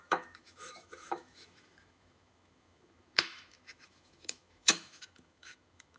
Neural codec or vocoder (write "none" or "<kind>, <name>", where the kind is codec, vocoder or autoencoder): autoencoder, DAC-VAE